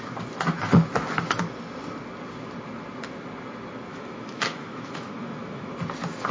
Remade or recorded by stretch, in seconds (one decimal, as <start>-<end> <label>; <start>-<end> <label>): 0.0-3.9 recorded; 3.9-5.7 remade; 5.7-6.3 recorded